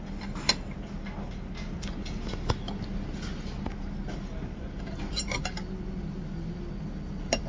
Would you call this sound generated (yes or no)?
no